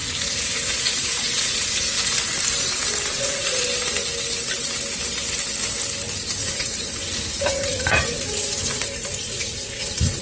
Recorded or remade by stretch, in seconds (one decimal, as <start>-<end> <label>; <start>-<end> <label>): 0.0-1.8 remade; 1.8-3.1 recorded; 3.1-3.6 remade; 3.6-6.4 recorded; 6.4-10.2 remade